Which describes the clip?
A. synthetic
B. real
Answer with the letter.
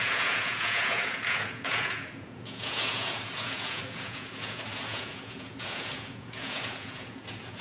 A